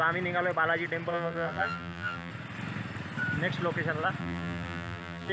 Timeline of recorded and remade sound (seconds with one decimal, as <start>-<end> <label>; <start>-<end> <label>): 0.0-1.1 recorded; 1.1-2.3 remade; 2.3-4.2 recorded; 4.2-5.3 remade